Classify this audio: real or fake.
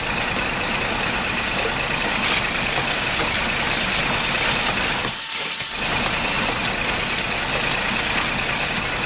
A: real